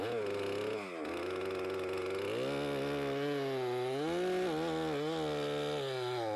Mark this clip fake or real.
real